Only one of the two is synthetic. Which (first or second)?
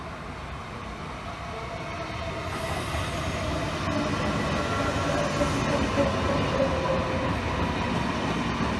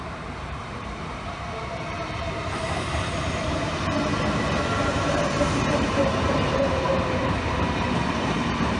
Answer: second